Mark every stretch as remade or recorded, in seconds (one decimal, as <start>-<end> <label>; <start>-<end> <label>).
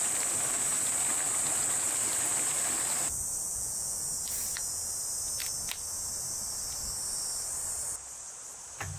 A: 0.0-3.5 recorded; 3.5-4.1 remade; 4.1-9.0 recorded